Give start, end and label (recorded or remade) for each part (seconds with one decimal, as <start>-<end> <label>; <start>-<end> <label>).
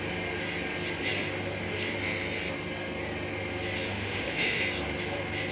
0.0-3.9 recorded; 3.9-4.6 remade; 4.6-5.5 recorded